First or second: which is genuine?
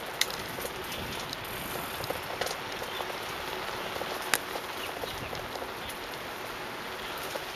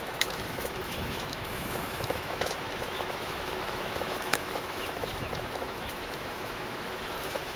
first